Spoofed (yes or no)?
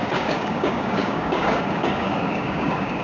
yes